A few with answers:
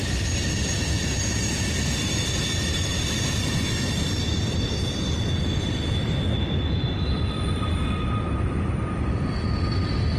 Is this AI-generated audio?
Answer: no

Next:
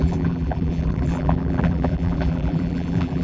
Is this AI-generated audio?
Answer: yes